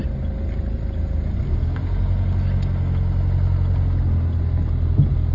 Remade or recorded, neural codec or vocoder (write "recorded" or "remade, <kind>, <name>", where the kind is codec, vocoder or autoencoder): recorded